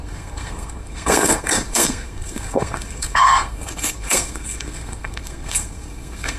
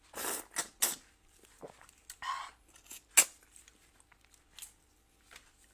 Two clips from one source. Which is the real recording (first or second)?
second